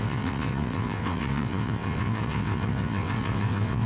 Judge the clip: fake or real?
fake